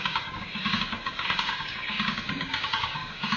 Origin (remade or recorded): remade